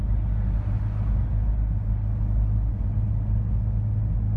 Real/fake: real